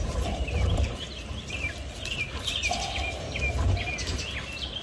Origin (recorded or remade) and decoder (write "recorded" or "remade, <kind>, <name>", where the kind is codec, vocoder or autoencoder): recorded